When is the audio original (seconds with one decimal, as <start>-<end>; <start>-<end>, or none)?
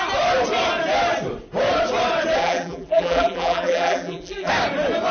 0.0-2.4; 4.5-5.1